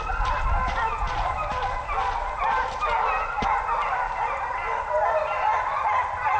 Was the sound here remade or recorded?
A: recorded